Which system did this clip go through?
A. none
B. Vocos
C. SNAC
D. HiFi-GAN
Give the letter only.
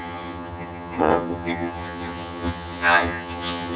D